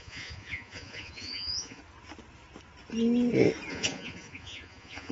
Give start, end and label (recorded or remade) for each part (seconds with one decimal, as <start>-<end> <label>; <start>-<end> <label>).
0.0-1.8 remade; 1.8-3.7 recorded; 3.7-5.1 remade